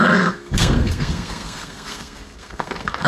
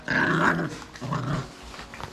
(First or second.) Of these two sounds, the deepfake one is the first